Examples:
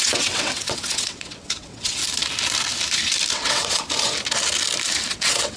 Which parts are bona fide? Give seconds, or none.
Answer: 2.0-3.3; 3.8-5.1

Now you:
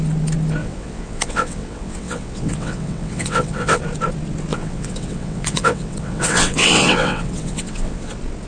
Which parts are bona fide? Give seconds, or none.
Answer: 0.0-0.6; 3.8-4.5; 8.1-8.5